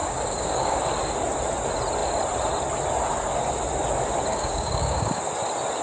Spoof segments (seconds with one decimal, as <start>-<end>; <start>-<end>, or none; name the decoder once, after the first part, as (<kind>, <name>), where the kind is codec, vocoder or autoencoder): 0.0-0.8 (codec, DAC); 4.3-5.2